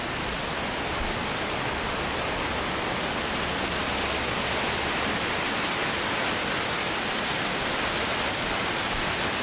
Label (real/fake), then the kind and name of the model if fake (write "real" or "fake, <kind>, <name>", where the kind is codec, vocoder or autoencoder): real